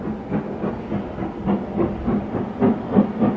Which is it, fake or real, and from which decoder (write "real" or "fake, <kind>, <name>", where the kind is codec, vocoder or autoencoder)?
real